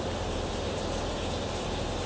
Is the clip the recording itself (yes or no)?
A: no